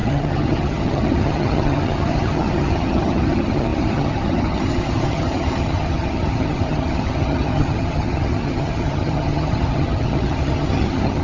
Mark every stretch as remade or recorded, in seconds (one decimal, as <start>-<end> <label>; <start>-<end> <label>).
0.0-11.2 remade